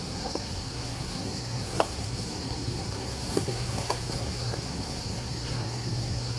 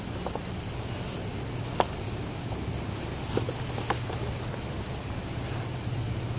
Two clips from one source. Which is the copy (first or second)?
first